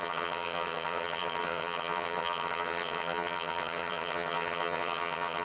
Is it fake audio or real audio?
fake